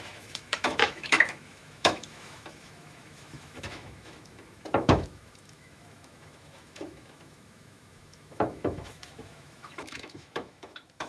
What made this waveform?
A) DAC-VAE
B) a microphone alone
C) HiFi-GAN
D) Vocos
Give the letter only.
A